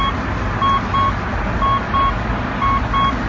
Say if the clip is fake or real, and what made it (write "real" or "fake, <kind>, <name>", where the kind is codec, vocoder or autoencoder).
real